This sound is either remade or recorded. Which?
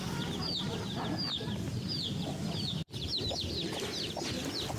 recorded